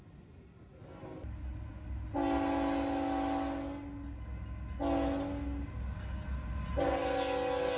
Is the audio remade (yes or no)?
no